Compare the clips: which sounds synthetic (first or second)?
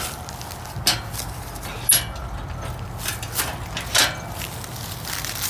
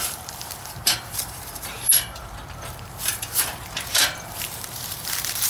second